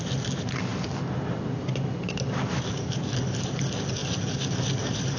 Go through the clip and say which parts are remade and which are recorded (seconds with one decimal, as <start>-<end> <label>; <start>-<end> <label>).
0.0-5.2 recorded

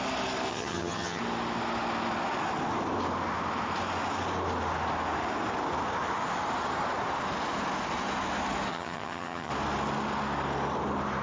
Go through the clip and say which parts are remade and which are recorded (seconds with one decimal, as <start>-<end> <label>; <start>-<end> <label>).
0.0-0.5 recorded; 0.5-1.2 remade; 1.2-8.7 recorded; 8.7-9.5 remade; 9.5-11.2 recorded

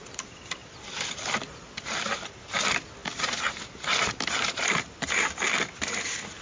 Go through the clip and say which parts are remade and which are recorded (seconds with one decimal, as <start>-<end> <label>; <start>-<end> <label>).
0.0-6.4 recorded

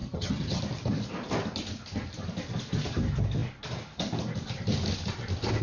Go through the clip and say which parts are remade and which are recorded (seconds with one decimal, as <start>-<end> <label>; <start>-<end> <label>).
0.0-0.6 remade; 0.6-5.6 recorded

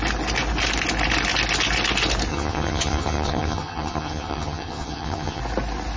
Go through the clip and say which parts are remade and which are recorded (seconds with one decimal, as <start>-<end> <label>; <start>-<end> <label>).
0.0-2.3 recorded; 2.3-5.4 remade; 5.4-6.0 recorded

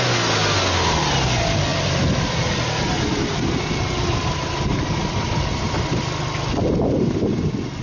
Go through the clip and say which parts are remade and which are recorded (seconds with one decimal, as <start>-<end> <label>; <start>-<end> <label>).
0.0-7.8 recorded

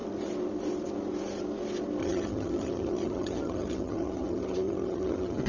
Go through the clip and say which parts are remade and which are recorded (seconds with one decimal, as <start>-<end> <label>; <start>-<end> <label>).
0.0-2.0 recorded; 2.0-5.5 remade